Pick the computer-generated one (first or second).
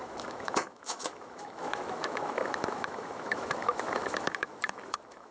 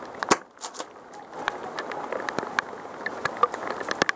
first